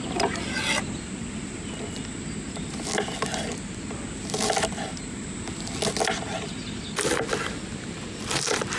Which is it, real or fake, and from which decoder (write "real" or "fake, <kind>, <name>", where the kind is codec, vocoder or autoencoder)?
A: real